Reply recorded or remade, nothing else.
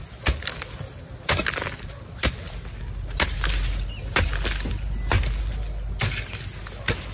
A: recorded